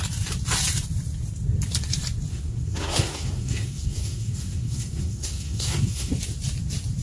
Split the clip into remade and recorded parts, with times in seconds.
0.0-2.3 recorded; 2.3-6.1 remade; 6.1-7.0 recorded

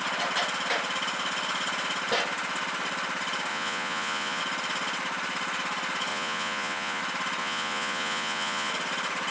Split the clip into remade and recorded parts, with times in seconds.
0.0-3.5 recorded; 3.5-4.4 remade; 4.4-6.1 recorded; 6.1-7.0 remade; 7.0-7.4 recorded; 7.4-8.7 remade; 8.7-9.3 recorded

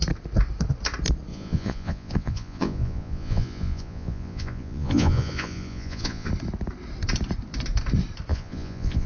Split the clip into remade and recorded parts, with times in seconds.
0.0-1.3 recorded; 1.3-6.3 remade; 6.3-8.3 recorded; 8.3-9.1 remade

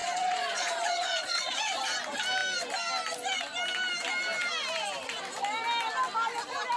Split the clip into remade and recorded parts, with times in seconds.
0.0-1.8 remade; 1.8-6.8 recorded

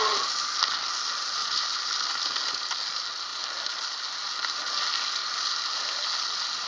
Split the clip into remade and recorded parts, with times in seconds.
0.0-6.7 recorded

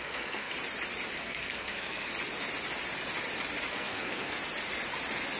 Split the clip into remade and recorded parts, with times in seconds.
0.0-0.5 remade; 0.5-1.2 recorded; 1.2-2.1 remade; 2.1-3.7 recorded; 3.7-4.4 remade; 4.4-5.4 recorded

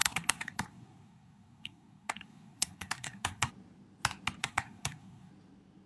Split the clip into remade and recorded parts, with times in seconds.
0.0-3.5 remade; 3.5-4.4 recorded; 4.4-5.3 remade; 5.3-5.9 recorded